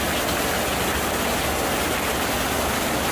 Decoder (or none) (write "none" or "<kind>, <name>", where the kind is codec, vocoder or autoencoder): none